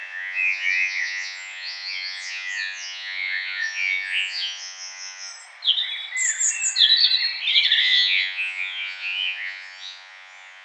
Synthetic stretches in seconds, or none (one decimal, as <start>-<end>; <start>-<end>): 0.0-5.3; 7.8-10.6